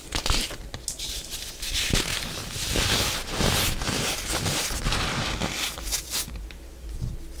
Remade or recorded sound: recorded